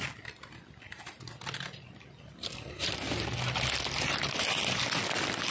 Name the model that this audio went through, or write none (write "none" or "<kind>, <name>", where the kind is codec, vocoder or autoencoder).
none